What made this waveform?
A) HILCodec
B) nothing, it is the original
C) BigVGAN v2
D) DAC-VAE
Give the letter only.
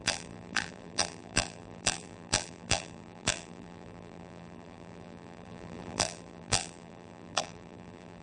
C